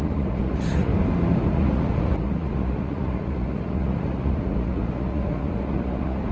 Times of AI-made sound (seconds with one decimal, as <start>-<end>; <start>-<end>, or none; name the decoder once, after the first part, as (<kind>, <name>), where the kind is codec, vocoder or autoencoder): 0.0-0.9 (vocoder, Vocos); 1.5-6.3